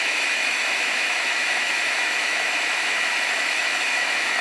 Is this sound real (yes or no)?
no